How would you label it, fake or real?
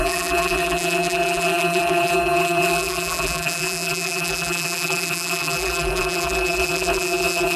fake